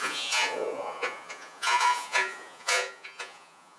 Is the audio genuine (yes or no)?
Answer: no